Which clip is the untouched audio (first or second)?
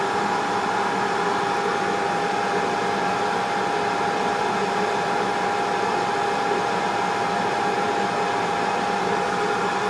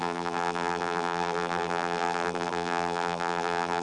first